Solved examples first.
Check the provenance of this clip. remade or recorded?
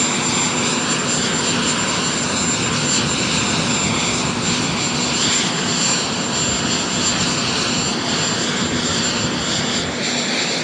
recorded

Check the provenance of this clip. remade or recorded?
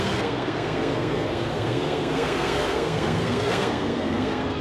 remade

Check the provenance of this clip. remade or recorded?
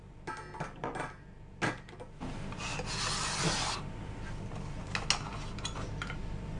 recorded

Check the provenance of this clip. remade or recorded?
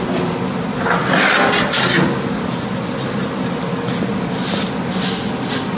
recorded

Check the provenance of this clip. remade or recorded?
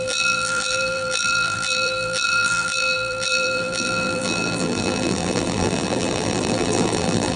remade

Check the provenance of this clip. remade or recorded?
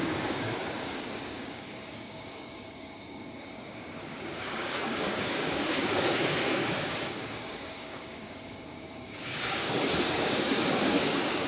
remade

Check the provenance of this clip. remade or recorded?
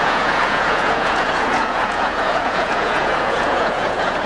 remade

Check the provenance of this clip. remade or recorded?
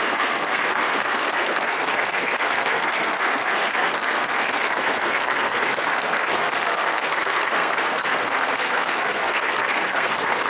remade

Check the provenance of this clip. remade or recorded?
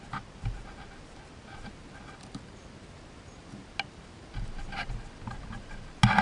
recorded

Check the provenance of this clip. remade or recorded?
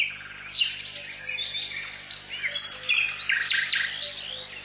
recorded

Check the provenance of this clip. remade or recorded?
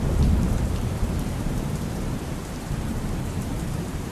remade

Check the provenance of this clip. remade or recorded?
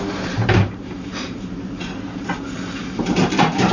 remade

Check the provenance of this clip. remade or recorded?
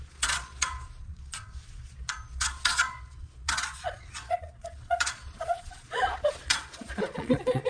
remade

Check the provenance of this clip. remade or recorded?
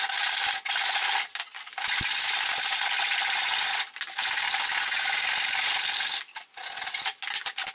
recorded